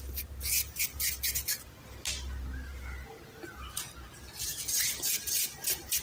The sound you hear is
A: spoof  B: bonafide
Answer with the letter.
B